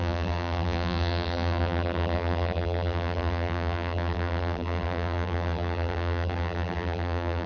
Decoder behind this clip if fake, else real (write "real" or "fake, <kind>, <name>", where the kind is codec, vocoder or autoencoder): fake, vocoder, BigVGAN v2